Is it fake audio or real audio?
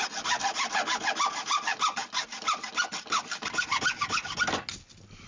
real